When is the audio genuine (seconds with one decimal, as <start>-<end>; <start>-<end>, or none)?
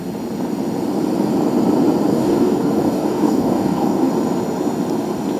0.0-2.1; 4.1-5.4